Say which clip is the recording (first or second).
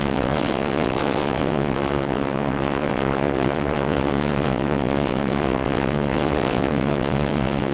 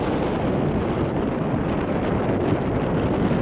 second